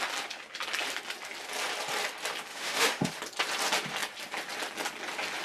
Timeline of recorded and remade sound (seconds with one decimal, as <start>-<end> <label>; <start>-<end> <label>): 0.0-2.5 recorded; 2.5-3.1 remade; 3.1-5.4 recorded

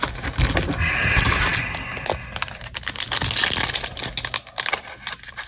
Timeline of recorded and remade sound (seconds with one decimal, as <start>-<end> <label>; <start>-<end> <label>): 0.0-5.5 recorded

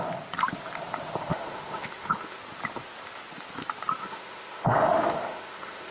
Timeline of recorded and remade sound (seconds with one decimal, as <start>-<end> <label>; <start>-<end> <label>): 0.0-1.3 recorded; 1.3-2.4 remade; 2.4-4.0 recorded; 4.0-5.9 remade

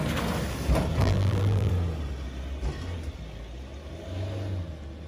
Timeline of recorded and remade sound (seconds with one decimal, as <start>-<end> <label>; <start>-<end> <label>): 0.0-1.0 recorded; 1.0-1.7 remade; 1.7-5.1 recorded